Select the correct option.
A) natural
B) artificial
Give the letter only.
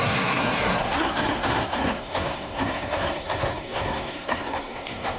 B